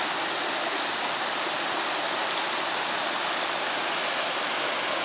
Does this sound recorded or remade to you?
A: recorded